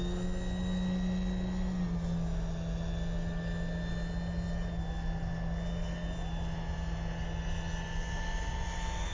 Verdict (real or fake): real